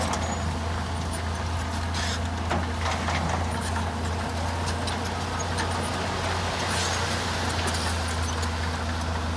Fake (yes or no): no